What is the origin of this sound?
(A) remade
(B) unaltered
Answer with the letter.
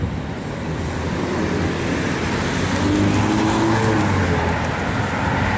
B